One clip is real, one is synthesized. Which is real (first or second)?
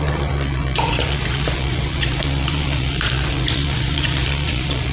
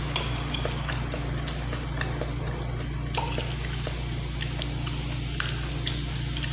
second